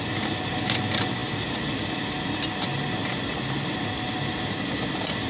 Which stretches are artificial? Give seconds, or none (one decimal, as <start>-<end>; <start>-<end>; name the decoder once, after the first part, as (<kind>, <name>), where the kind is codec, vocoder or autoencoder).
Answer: none